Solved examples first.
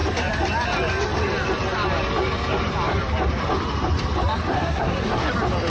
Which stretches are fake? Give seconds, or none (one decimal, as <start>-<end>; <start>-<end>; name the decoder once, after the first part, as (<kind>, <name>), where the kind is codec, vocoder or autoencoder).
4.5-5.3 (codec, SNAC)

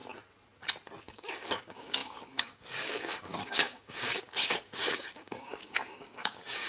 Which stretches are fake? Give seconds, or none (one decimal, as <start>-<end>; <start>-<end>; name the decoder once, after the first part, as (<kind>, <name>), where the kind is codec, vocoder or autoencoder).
1.1-6.7 (codec, DAC)

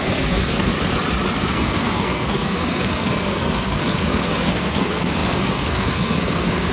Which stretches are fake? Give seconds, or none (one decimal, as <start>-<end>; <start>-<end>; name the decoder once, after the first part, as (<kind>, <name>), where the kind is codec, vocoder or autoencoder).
0.0-0.7 (codec, SNAC); 1.4-6.7

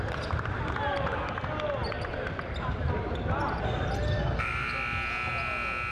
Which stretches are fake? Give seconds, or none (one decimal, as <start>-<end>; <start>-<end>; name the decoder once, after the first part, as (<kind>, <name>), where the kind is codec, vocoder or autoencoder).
none

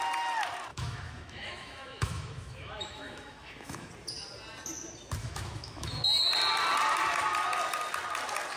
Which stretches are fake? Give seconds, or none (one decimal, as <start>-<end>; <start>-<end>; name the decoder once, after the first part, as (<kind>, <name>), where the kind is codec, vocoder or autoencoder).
0.7-3.9 (autoencoder, DAC-VAE); 5.2-6.0